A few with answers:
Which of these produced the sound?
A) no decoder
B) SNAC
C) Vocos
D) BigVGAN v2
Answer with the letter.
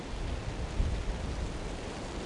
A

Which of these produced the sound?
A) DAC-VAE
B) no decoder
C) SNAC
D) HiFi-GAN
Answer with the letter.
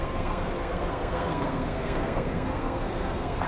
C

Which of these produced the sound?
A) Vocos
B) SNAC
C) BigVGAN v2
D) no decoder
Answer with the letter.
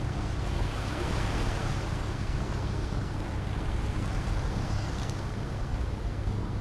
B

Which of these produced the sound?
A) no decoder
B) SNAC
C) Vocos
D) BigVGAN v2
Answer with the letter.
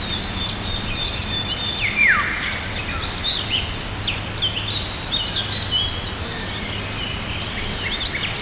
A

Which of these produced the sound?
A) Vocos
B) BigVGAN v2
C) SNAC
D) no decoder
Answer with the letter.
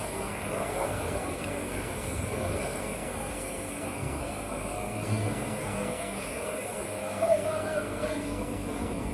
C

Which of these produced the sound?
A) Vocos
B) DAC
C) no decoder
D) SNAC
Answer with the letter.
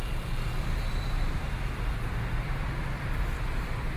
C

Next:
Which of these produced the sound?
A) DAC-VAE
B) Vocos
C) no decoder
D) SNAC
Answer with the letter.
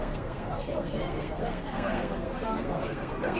D